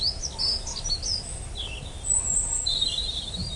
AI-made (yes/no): no